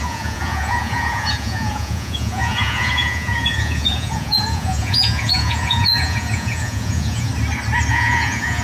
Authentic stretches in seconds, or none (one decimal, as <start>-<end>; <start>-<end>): 7.3-7.9

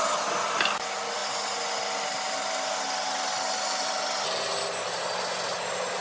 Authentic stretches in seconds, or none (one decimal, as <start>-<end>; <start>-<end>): 0.0-6.0

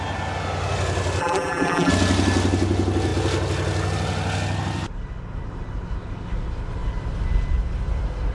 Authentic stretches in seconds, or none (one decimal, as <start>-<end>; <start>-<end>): 0.0-1.2; 1.9-8.3

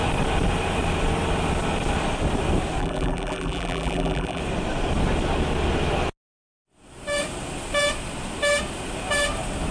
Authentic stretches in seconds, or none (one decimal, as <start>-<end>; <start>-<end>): 0.0-2.8; 4.4-9.7

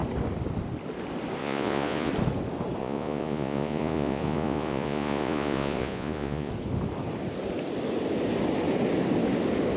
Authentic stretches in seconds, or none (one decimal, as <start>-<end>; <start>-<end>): 0.0-1.4; 2.1-2.8; 6.5-9.8

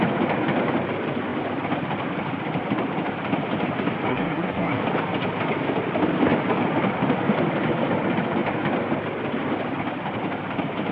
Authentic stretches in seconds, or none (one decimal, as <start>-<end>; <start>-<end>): 0.0-4.1; 4.8-10.9